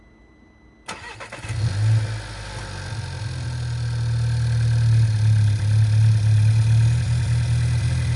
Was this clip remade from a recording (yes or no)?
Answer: no